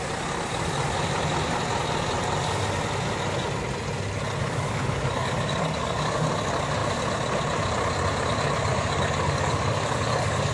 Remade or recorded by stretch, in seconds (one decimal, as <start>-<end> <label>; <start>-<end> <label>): 0.0-4.4 recorded; 4.4-6.3 remade; 6.3-8.7 recorded; 8.7-10.5 remade